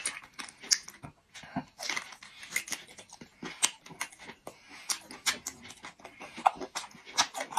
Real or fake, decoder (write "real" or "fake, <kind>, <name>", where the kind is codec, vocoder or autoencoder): real